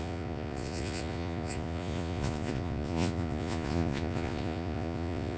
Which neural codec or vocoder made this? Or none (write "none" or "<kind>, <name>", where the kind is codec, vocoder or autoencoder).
vocoder, Vocos